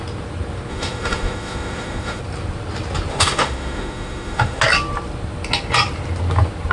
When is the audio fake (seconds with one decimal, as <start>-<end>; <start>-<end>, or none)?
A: 0.7-2.2; 3.1-4.6